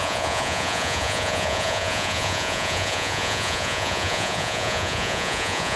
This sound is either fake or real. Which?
fake